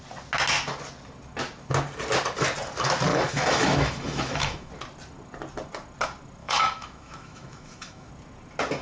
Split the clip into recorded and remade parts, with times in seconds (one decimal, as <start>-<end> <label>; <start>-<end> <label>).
0.0-3.1 recorded; 3.1-4.7 remade; 4.7-6.4 recorded; 6.4-8.1 remade; 8.1-8.8 recorded